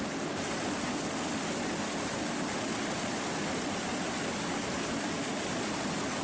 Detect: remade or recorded recorded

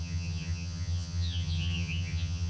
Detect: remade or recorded remade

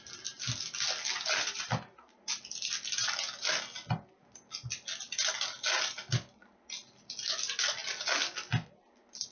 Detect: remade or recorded recorded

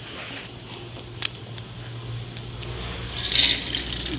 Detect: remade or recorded recorded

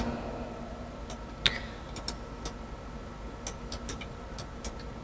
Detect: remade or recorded recorded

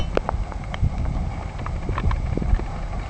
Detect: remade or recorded recorded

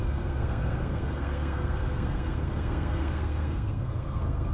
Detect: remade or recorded remade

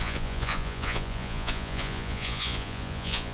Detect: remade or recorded remade